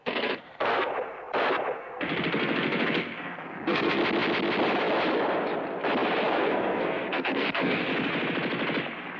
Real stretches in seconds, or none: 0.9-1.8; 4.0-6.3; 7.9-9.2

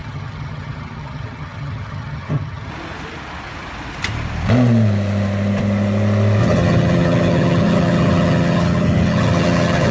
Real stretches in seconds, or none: 2.7-6.4

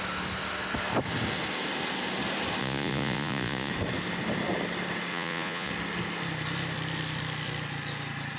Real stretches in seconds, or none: 0.0-2.6; 3.7-5.1; 5.7-8.4